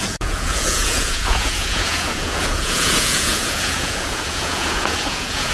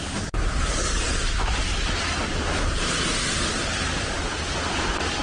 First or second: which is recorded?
second